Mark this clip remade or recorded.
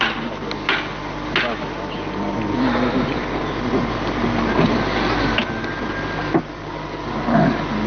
recorded